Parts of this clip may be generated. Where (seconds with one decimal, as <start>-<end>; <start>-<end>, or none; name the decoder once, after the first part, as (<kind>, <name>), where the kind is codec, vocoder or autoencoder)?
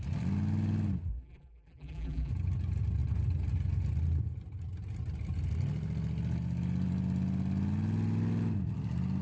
1.1-2.3 (vocoder, BigVGAN v2)